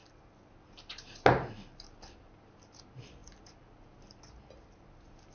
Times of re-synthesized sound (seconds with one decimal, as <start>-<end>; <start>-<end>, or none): none